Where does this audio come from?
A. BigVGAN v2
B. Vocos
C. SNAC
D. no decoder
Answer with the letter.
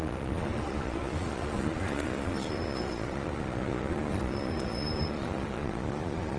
B